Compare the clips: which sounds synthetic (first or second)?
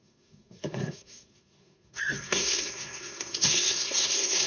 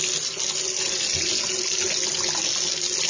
first